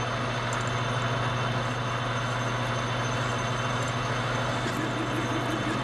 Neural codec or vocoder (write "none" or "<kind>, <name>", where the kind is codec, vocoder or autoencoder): none